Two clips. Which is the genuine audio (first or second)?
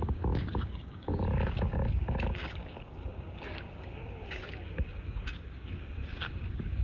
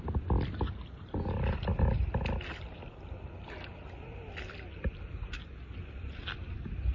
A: second